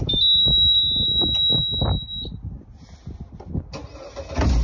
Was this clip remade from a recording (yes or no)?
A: no